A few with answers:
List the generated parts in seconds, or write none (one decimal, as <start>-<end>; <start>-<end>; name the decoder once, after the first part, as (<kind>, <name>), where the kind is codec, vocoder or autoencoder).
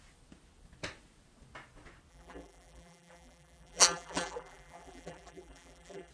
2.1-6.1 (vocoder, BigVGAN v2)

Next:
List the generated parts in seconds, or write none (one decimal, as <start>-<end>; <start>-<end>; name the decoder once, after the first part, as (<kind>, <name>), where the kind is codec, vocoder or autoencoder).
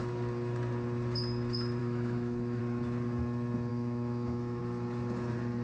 1.8-2.6 (autoencoder, DAC-VAE); 3.7-4.6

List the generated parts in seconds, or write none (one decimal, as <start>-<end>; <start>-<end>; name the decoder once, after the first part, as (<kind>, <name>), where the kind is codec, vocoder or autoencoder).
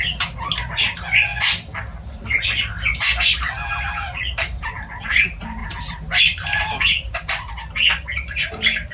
5.6-7.5 (vocoder, BigVGAN v2)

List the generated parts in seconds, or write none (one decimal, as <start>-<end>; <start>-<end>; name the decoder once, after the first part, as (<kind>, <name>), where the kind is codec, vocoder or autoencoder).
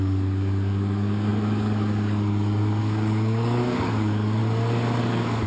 0.0-4.4 (codec, DAC); 5.0-5.5